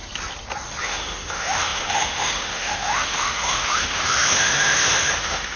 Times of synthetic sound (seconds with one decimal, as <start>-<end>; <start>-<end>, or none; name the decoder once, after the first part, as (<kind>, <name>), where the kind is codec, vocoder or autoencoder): 0.8-5.6 (autoencoder, DAC-VAE)